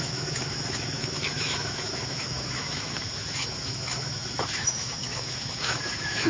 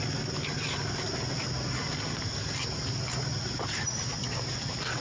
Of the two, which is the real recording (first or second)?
second